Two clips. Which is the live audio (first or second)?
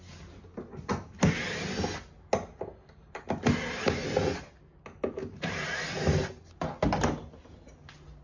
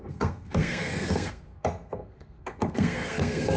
first